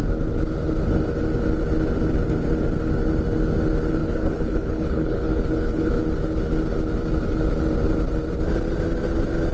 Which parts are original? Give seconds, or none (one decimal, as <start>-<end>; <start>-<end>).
0.0-4.0; 5.9-9.5